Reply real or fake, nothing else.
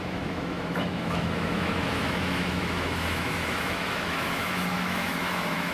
fake